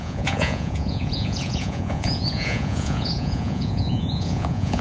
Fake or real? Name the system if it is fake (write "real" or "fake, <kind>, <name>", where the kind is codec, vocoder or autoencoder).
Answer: fake, vocoder, Vocos